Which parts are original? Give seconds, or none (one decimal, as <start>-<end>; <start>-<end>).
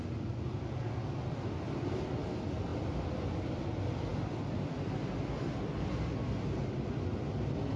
0.0-7.8